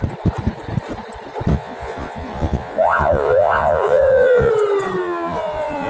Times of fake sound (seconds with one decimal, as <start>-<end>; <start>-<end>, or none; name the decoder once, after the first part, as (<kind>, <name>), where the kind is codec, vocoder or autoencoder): 1.5-4.5 (vocoder, Vocos); 5.0-5.9